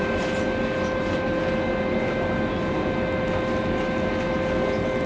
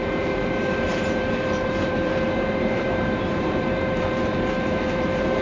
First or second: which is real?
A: first